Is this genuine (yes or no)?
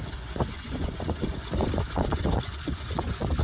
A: no